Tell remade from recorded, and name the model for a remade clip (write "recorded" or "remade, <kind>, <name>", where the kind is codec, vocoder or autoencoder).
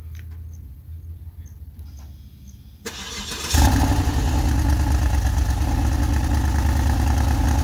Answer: recorded